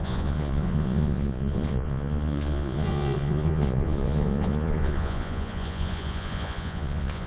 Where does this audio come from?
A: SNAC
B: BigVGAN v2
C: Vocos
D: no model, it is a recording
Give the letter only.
C